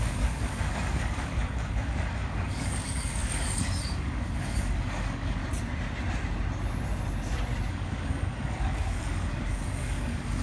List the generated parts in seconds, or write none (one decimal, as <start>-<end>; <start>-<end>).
0.0-5.4; 7.7-10.4